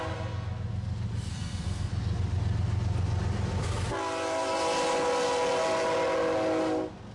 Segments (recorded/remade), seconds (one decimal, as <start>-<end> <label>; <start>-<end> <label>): 0.0-1.3 recorded; 1.3-1.9 remade; 1.9-7.1 recorded